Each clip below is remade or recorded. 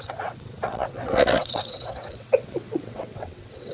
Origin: remade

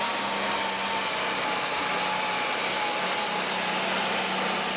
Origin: recorded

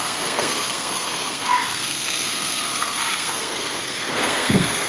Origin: remade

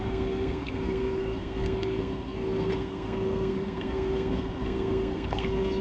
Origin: remade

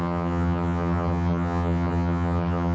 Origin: remade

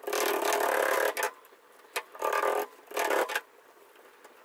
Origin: recorded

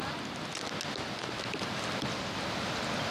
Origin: recorded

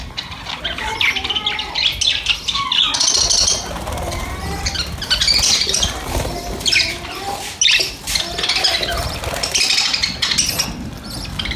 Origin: recorded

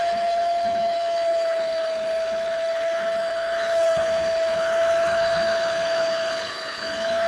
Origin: remade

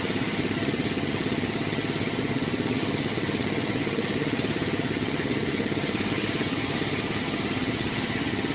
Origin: remade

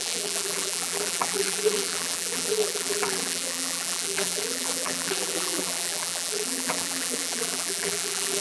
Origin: remade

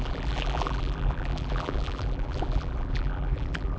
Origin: remade